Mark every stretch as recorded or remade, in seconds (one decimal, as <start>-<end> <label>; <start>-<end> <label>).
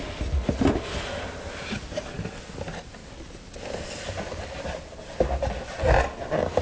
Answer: 0.0-6.6 recorded